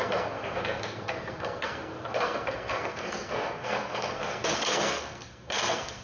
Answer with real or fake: fake